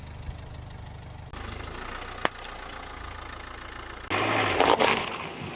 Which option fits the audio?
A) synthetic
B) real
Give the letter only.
B